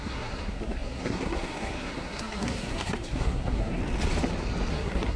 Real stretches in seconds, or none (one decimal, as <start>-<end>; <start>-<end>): 3.8-4.7